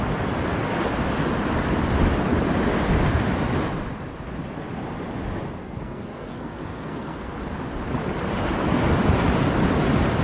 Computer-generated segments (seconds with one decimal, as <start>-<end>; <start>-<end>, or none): 5.6-7.4